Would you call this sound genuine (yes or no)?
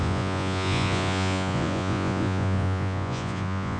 no